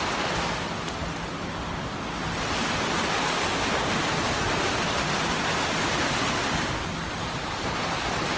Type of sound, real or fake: real